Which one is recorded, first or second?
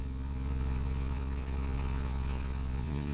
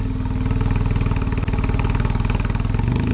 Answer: second